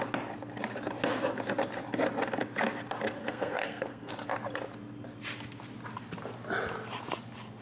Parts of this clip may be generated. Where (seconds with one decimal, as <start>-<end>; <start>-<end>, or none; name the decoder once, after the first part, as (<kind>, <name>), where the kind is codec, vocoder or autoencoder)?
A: 3.2-4.1 (codec, SNAC)

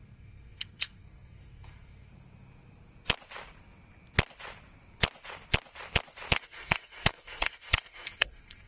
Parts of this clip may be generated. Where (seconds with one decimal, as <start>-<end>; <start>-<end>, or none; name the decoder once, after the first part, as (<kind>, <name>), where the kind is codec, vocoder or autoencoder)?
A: 0.0-2.1 (codec, SNAC); 6.4-8.7

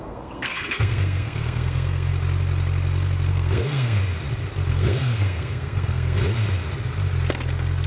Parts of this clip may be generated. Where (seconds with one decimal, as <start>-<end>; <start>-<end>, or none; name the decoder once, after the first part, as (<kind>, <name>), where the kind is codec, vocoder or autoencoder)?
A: 0.0-2.1 (codec, SNAC); 3.3-4.0; 4.7-6.2

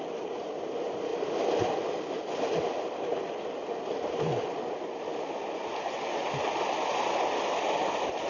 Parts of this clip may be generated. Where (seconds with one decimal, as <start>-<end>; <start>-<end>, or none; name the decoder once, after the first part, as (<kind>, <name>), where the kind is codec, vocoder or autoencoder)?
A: none

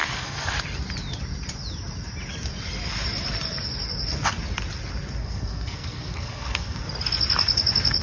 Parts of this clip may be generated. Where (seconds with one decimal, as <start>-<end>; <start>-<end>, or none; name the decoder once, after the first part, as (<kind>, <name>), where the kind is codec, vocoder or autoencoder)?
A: 0.0-0.5 (codec, SNAC); 5.2-6.8

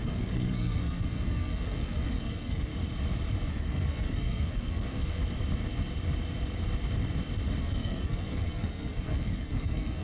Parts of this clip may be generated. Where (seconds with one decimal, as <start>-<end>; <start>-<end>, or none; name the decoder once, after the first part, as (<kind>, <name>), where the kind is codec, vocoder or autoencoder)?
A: 0.0-2.7 (codec, SNAC); 3.5-5.2; 7.6-10.0

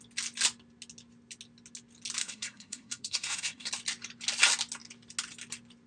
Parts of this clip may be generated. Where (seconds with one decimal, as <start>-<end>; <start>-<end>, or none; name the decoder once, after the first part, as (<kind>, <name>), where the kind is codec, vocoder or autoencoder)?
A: 2.2-3.7 (codec, SNAC)